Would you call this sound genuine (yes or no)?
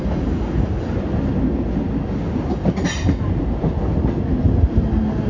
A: yes